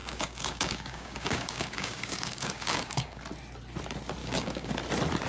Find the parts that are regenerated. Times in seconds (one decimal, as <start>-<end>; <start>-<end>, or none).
0.0-3.2; 4.2-4.7